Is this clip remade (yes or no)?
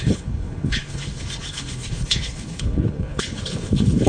yes